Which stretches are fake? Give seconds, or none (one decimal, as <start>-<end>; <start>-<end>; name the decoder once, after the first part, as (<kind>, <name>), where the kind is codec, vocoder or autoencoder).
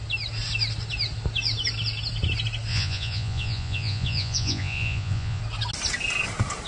2.7-5.4 (vocoder, Vocos)